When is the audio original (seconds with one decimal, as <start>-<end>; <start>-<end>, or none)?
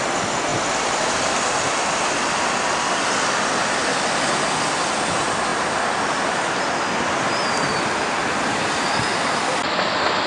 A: 0.0-10.3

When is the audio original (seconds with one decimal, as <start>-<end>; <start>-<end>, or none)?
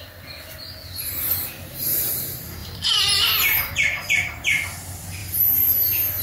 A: 0.0-1.6; 2.1-2.6; 4.1-5.2; 5.7-6.2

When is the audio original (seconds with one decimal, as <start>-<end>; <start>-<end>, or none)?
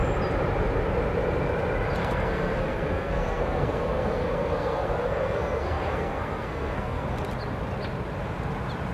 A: 0.0-2.0; 7.1-8.9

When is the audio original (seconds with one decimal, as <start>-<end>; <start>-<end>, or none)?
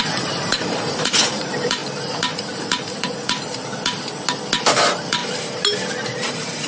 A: 1.8-2.5; 3.7-4.7; 5.2-6.3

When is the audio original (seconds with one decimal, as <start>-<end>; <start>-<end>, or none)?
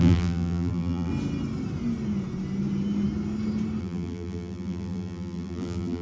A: 1.1-3.8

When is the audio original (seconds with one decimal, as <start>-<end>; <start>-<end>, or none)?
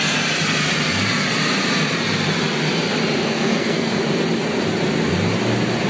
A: 0.0-3.2; 4.0-5.9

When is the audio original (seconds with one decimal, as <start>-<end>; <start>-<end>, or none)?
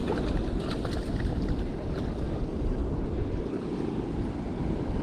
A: 0.0-5.0